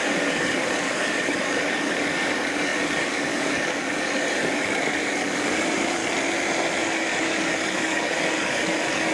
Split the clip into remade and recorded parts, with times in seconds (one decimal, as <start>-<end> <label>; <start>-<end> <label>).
0.0-6.0 remade; 6.0-6.8 recorded; 6.8-9.1 remade